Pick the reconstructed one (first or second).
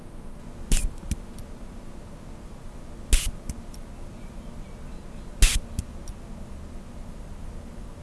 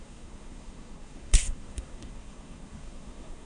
second